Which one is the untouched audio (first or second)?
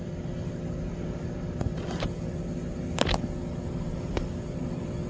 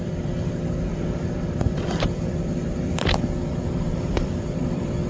first